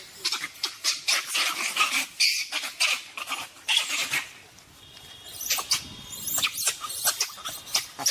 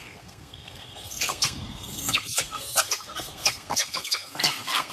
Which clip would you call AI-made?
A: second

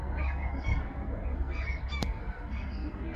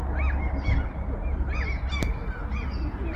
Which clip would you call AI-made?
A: first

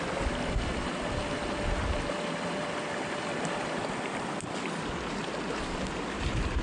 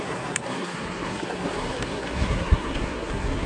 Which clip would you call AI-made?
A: second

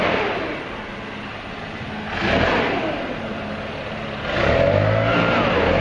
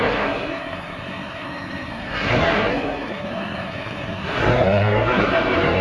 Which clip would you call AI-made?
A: second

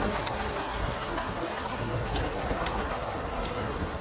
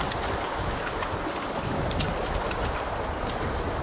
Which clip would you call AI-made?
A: first